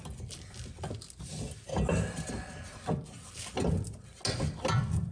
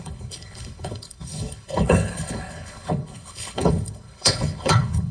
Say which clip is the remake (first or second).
second